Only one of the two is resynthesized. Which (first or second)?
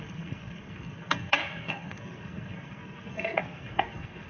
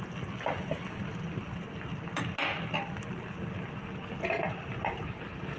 first